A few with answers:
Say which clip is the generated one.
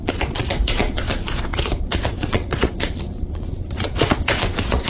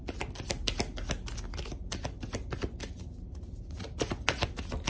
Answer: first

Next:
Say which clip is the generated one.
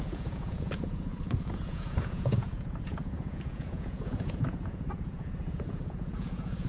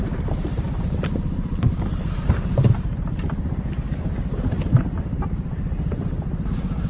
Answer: first